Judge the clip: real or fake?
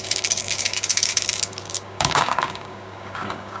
fake